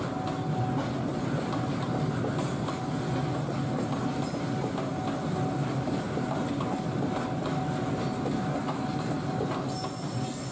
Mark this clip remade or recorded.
recorded